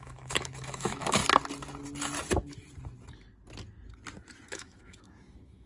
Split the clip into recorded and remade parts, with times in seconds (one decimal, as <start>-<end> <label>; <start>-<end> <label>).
0.0-1.2 remade; 1.2-4.5 recorded; 4.5-5.7 remade